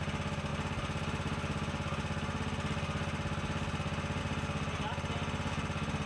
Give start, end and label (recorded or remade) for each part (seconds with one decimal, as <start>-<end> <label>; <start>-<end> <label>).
0.0-6.1 recorded